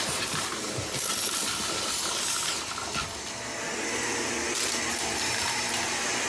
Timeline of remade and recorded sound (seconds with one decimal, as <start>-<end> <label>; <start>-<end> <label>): 0.0-1.1 remade; 1.1-4.9 recorded; 4.9-6.3 remade